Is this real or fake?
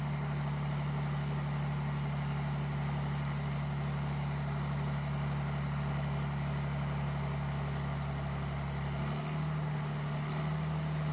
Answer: real